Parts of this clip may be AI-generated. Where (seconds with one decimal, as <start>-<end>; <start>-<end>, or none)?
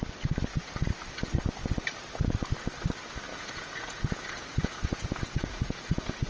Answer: 3.3-6.3